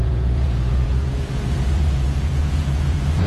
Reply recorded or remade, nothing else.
remade